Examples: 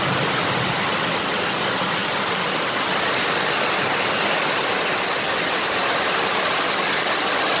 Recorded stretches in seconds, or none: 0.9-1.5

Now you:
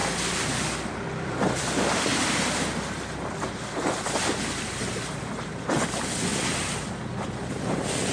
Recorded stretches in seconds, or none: 0.0-1.1; 2.1-4.8

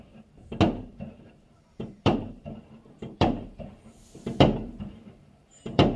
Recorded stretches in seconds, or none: 0.4-0.9